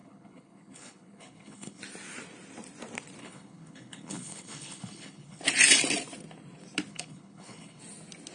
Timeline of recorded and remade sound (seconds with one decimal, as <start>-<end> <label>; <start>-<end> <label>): 0.0-1.8 remade; 1.8-3.2 recorded; 3.2-5.4 remade; 5.4-6.9 recorded; 6.9-7.8 remade; 7.8-8.3 recorded